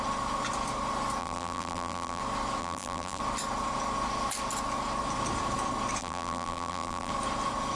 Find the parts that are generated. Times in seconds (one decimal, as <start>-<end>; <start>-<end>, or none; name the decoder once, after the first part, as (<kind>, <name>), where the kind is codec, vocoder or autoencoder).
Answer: 1.2-2.2 (vocoder, BigVGAN v2); 2.6-3.2; 6.0-7.1